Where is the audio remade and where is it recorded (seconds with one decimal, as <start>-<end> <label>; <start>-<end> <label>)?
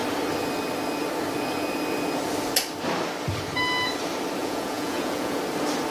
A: 0.0-4.4 recorded; 4.4-5.4 remade; 5.4-5.9 recorded